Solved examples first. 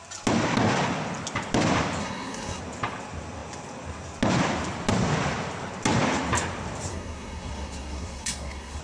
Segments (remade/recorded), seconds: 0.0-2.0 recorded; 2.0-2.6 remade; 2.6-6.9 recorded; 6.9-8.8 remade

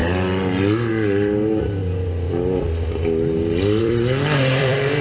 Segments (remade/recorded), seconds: 0.0-0.9 recorded; 0.9-1.8 remade; 1.8-3.8 recorded; 3.8-5.0 remade

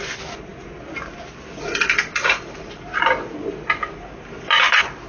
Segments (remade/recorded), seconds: 0.0-5.1 recorded